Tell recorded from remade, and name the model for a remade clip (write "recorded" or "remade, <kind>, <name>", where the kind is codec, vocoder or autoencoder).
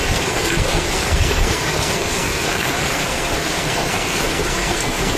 remade, codec, SNAC